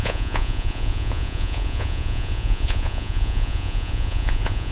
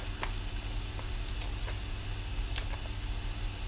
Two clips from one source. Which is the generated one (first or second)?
first